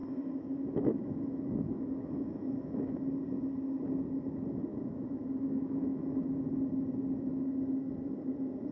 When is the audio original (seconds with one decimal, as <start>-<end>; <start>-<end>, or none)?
3.0-4.7; 6.2-7.3; 7.9-8.7